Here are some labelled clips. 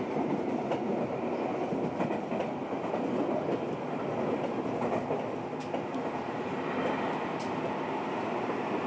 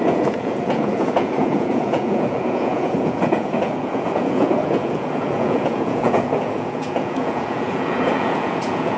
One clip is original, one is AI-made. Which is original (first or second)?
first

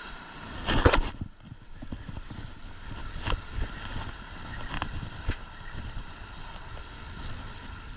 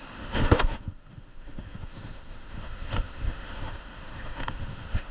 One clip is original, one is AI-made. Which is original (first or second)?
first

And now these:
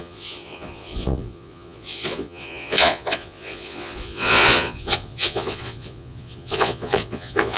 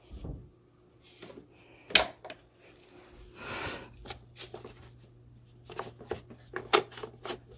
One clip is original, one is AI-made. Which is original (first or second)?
second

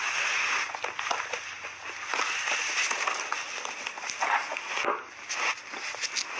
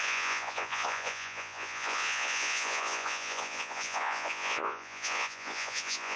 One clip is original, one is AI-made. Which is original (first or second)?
first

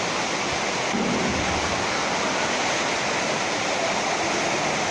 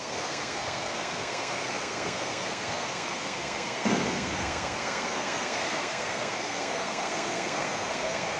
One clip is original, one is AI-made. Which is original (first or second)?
first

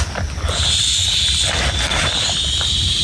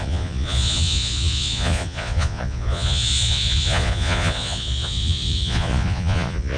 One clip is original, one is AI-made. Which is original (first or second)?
first